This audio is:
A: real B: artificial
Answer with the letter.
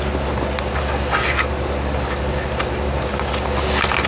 A